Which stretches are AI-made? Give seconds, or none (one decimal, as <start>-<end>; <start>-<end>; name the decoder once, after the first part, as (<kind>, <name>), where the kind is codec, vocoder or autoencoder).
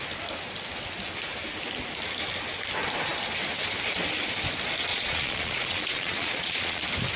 4.9-6.8 (vocoder, Vocos)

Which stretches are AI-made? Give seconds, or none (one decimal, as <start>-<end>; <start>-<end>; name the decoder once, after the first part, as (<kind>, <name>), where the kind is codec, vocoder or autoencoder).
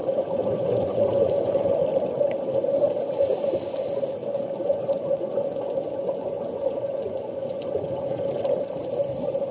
0.0-1.7 (vocoder, Vocos); 4.2-8.2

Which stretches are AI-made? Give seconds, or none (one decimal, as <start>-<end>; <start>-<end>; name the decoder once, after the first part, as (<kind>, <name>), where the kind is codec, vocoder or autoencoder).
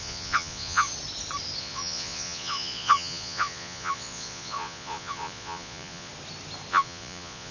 0.0-0.9 (vocoder, Vocos); 1.6-6.1; 6.7-7.5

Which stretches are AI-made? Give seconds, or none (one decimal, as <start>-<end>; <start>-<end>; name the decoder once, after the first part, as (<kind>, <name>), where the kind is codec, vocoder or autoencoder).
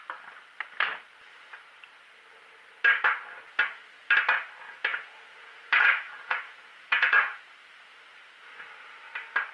4.9-7.4 (vocoder, Vocos)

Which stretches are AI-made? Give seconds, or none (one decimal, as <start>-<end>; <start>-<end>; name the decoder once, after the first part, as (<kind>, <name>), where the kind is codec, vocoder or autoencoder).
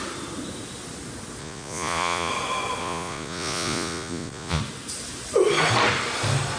1.4-2.3 (vocoder, Vocos); 2.8-4.6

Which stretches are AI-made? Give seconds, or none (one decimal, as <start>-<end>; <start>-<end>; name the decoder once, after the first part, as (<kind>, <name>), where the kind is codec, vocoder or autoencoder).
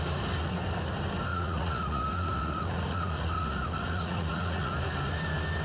1.3-4.7 (vocoder, Vocos)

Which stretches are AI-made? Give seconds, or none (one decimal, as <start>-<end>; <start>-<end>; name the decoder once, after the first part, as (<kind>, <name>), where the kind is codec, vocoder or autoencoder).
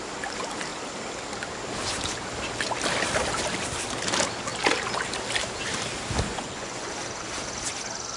6.3-6.9 (vocoder, Vocos)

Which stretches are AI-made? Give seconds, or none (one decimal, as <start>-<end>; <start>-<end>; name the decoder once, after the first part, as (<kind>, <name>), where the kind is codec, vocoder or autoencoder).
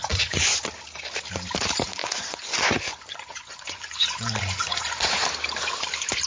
0.0-0.6 (vocoder, Vocos); 2.0-5.0